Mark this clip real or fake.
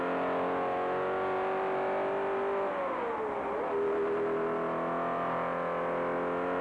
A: real